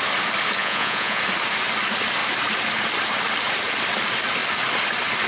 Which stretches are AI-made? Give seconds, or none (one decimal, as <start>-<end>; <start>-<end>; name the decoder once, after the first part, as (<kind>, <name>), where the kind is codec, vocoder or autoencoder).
0.6-1.2 (vocoder, Vocos)

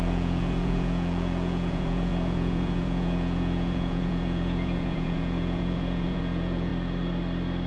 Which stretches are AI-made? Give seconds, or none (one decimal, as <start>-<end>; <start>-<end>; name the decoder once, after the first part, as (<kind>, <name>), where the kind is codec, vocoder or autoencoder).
0.0-6.7 (vocoder, Vocos)

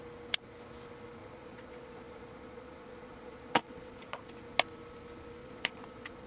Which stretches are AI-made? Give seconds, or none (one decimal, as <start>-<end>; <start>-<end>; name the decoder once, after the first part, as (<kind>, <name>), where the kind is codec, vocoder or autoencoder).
1.2-4.3 (vocoder, Vocos); 5.4-6.3

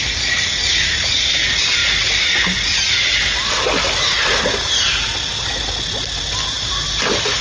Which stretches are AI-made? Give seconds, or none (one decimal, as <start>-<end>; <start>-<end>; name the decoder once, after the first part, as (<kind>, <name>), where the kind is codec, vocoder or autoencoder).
0.0-1.3 (vocoder, Vocos)